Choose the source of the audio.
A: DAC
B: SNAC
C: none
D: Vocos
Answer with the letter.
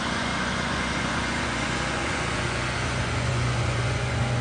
D